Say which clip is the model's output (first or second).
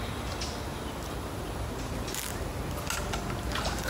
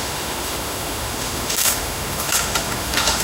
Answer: second